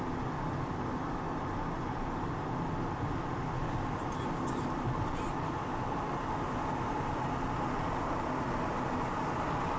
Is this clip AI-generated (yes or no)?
no